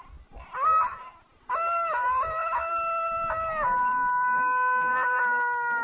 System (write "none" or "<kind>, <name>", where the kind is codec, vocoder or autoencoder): none